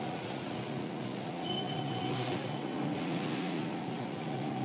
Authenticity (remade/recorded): remade